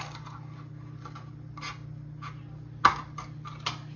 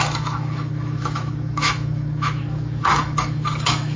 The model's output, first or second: second